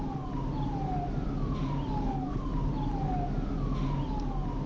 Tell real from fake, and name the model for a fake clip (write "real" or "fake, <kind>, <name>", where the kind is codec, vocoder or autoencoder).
real